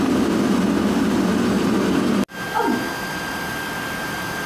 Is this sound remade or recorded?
recorded